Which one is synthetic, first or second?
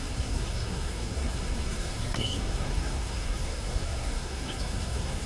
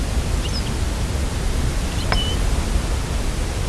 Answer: first